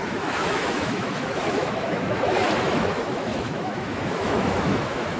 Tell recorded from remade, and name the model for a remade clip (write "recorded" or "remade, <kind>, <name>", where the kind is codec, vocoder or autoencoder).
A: remade, autoencoder, DAC-VAE